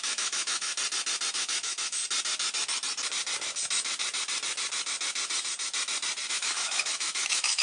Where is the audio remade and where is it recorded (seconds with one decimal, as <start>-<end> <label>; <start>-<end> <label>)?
0.0-0.7 remade; 0.7-1.3 recorded; 1.3-2.0 remade; 2.0-6.3 recorded; 6.3-7.6 remade